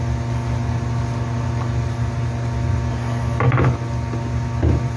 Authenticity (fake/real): real